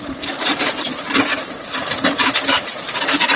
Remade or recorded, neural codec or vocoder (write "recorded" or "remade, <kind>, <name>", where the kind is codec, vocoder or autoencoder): remade, vocoder, BigVGAN v2